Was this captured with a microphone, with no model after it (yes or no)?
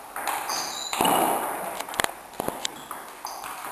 yes